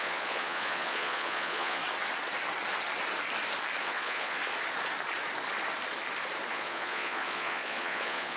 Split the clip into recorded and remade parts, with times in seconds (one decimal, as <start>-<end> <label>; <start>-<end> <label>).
0.0-1.8 remade; 1.8-3.8 recorded; 3.8-4.4 remade; 4.4-6.5 recorded; 6.5-8.4 remade